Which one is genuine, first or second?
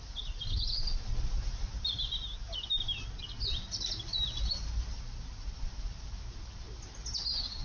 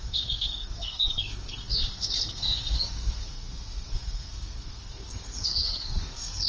first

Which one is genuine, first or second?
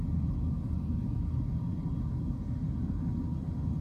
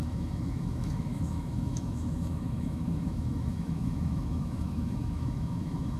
first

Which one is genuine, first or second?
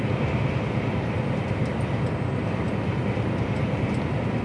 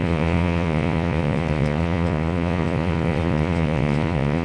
first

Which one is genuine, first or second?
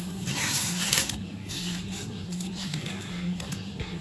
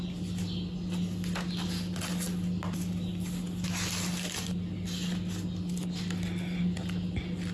second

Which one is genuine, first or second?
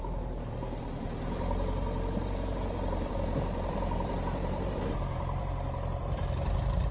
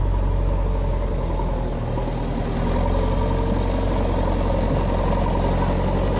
second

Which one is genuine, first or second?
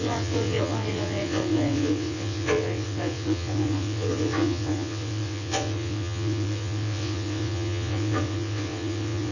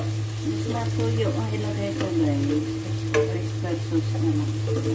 second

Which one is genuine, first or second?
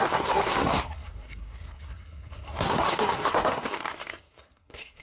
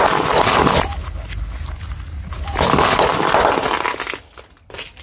second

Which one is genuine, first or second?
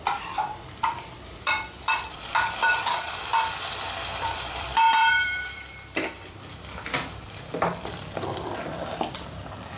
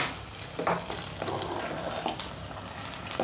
second